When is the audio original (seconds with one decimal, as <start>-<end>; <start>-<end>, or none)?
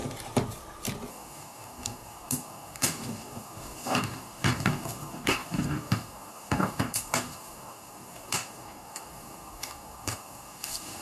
0.0-1.1